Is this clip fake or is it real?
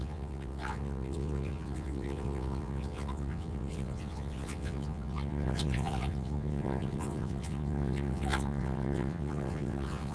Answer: fake